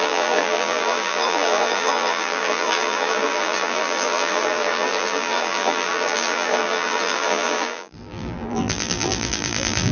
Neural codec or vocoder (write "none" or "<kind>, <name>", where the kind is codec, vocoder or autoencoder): vocoder, BigVGAN v2